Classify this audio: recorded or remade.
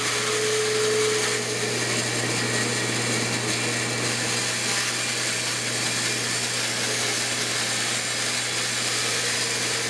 recorded